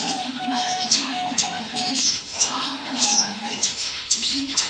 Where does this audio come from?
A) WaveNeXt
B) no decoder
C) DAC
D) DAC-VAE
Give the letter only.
D